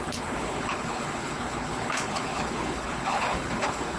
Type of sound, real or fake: fake